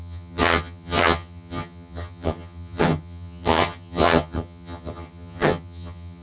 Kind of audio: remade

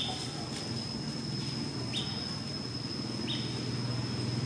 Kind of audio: recorded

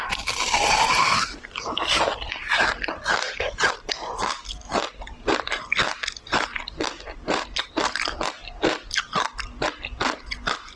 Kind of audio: recorded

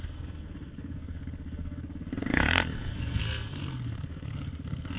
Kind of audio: remade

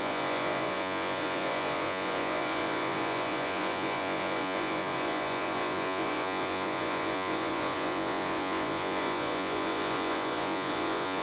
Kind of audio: remade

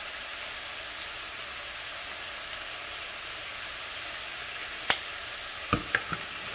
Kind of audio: recorded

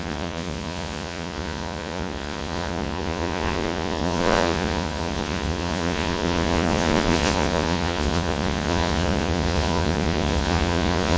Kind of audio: remade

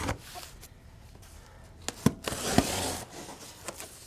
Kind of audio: recorded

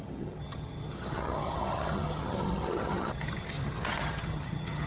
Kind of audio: remade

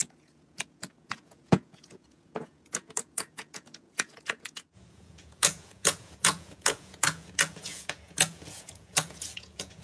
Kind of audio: remade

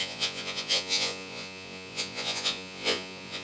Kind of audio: remade